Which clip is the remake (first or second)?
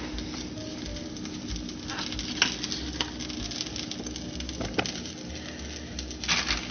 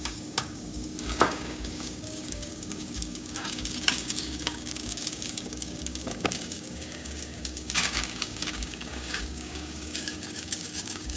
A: second